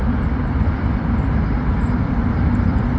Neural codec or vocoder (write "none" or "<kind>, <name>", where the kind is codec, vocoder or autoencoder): none